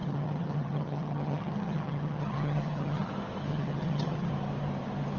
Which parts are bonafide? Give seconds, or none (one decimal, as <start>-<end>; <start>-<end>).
3.1-3.5; 4.3-5.2